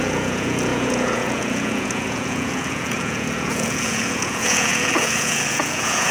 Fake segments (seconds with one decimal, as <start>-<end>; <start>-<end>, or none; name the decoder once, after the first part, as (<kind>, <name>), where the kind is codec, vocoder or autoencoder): 0.0-6.1 (vocoder, Vocos)